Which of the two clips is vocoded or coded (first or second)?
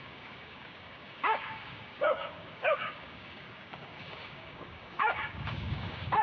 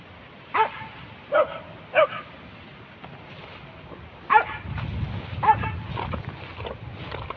first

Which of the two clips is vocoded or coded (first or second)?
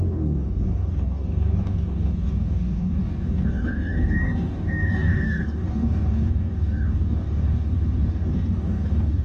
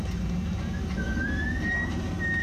first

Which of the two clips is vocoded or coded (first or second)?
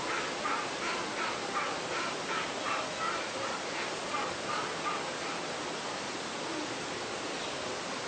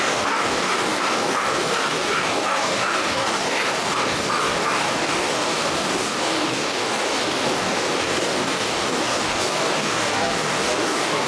second